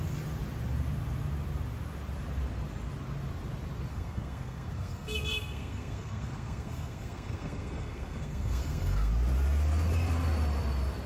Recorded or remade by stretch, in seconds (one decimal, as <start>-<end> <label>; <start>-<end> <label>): 0.0-3.9 recorded; 3.9-9.1 remade; 9.1-11.1 recorded